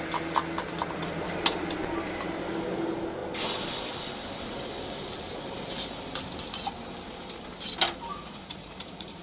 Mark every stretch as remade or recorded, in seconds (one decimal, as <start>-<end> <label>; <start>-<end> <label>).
0.0-8.1 recorded; 8.1-9.2 remade